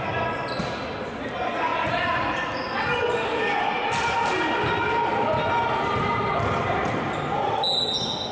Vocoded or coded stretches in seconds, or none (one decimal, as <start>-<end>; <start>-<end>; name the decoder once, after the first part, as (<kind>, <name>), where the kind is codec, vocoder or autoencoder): 1.7-2.5 (vocoder, Vocos)